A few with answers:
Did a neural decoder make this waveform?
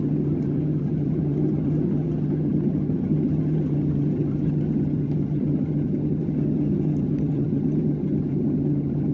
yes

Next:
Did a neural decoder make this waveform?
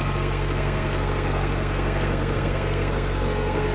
yes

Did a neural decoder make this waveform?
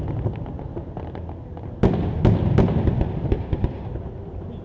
no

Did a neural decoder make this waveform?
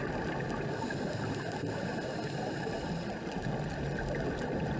no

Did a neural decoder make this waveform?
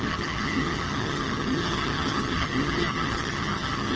yes